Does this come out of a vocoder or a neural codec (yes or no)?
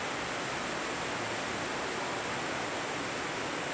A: no